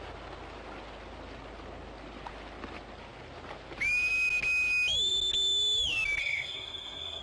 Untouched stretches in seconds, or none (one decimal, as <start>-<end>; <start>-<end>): 0.0-6.2